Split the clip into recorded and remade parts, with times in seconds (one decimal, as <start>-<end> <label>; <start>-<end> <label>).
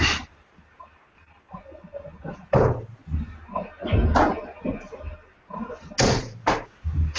0.0-3.0 remade; 3.0-6.4 recorded; 6.4-7.2 remade